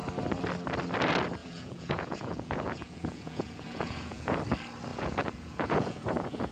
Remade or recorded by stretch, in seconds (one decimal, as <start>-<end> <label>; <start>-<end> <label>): 0.0-1.4 recorded; 1.4-4.4 remade; 4.4-4.9 recorded; 4.9-6.5 remade